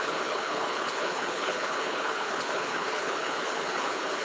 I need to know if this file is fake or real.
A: fake